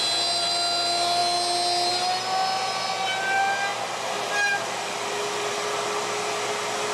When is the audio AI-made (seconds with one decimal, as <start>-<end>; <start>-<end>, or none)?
none